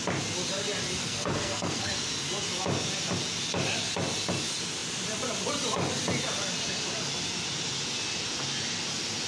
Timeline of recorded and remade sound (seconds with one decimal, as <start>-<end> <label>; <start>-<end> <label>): 0.0-1.0 recorded; 1.0-1.9 remade; 1.9-9.3 recorded